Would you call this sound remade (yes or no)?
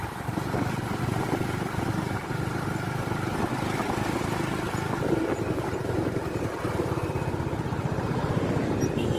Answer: no